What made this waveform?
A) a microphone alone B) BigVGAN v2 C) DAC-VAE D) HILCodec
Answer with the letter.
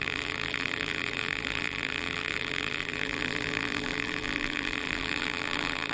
B